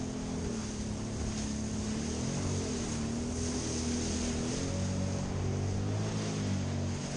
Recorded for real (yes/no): yes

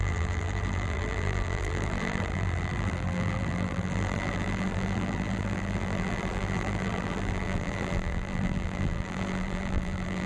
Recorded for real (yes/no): no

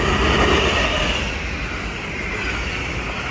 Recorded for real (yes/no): yes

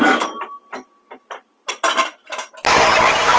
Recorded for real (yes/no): yes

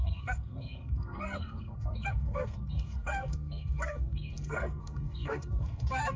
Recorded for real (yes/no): no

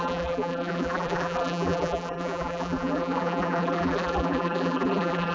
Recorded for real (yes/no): no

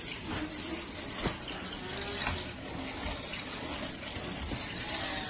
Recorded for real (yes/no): yes